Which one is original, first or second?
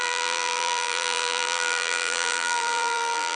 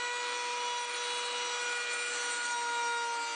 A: second